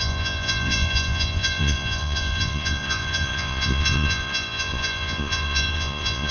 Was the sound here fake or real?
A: fake